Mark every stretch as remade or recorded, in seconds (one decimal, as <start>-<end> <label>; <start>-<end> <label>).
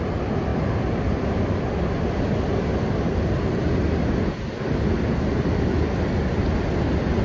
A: 0.0-7.2 recorded